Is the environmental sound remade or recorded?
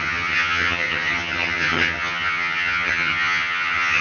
remade